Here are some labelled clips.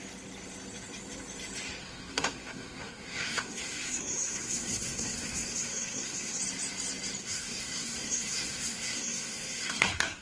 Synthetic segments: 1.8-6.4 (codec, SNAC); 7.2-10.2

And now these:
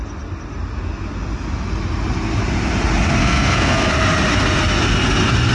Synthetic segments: 3.2-3.9 (codec, SNAC)

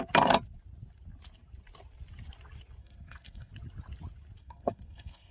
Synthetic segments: 2.8-3.5 (codec, SNAC); 4.4-5.3